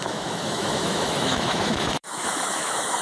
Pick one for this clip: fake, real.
fake